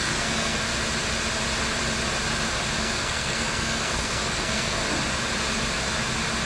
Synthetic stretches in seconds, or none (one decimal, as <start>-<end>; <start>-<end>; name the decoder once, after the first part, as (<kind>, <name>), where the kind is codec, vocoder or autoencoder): 0.0-0.7 (codec, SNAC); 2.8-4.8